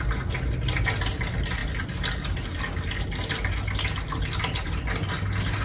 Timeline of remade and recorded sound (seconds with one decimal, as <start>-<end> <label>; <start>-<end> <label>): 0.0-5.6 recorded